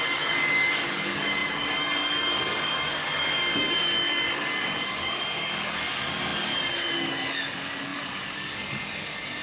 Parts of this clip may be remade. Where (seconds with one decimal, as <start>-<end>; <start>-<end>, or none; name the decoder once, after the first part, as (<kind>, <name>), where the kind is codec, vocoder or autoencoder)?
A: 0.0-9.4 (codec, DAC)